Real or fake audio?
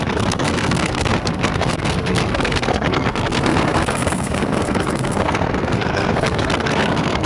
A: fake